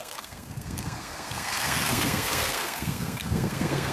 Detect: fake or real fake